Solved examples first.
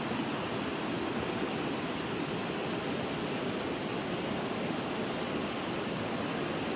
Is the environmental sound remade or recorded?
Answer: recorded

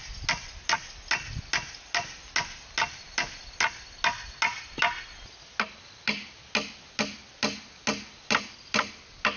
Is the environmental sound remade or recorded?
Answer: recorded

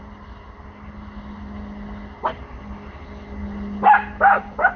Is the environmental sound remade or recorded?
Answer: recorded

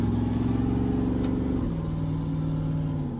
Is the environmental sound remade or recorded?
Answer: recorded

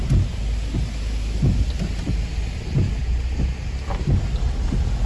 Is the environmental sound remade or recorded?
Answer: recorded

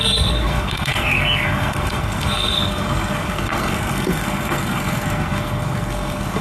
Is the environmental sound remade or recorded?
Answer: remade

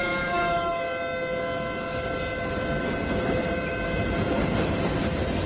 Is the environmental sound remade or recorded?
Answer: recorded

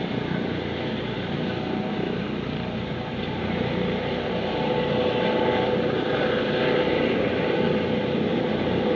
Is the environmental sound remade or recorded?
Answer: recorded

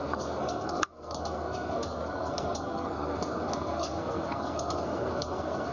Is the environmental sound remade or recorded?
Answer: remade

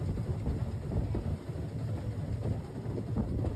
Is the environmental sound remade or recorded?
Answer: recorded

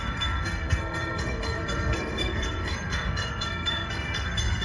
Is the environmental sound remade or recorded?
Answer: remade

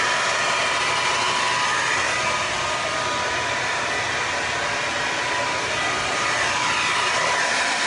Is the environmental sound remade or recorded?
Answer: recorded